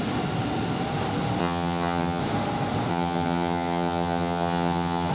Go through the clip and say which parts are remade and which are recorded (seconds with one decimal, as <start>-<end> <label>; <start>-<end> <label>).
0.0-1.4 recorded; 1.4-2.2 remade; 2.2-2.9 recorded; 2.9-5.1 remade